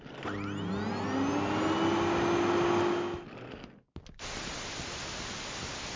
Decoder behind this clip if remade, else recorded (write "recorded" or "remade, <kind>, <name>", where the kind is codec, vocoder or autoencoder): recorded